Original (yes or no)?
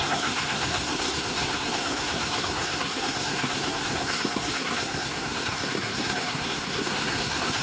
no